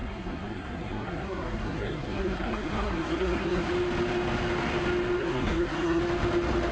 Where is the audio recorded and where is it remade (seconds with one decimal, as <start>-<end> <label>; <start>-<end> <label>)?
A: 0.0-3.7 remade; 3.7-5.2 recorded; 5.2-6.0 remade; 6.0-6.7 recorded